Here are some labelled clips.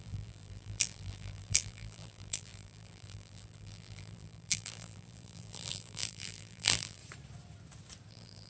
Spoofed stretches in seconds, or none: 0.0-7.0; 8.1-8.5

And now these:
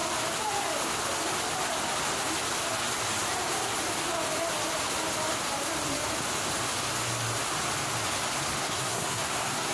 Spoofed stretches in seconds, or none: 8.6-9.7